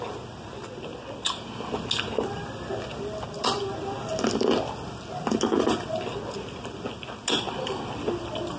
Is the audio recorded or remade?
recorded